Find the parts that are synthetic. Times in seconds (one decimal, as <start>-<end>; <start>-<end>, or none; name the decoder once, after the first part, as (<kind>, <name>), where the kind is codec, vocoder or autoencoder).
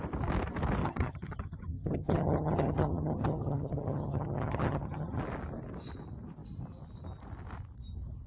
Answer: 0.8-5.2 (vocoder, HiFi-GAN)